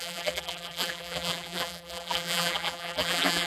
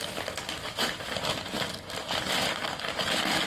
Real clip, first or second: second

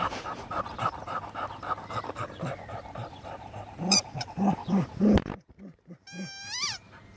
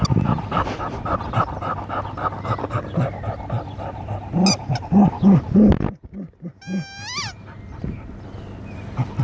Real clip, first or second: second